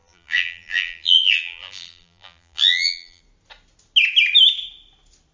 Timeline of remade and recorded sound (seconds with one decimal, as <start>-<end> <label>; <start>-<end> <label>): 0.0-3.2 remade; 3.2-5.3 recorded